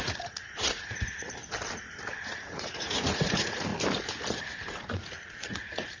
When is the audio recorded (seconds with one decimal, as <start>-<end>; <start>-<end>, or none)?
1.4-2.2; 3.7-4.4